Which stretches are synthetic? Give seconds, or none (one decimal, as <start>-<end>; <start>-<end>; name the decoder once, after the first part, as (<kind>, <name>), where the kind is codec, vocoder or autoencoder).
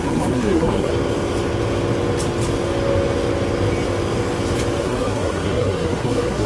0.0-0.9 (codec, SNAC); 4.8-6.5